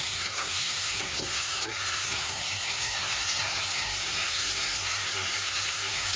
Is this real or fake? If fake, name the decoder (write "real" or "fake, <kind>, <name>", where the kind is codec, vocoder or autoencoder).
fake, codec, SNAC